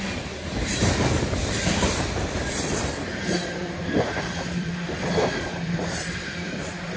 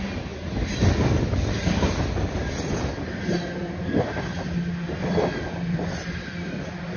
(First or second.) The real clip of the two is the second